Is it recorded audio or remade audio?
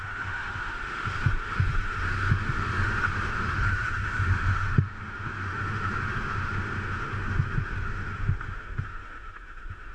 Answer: remade